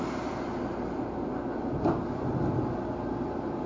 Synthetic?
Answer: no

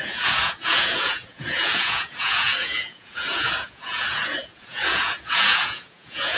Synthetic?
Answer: yes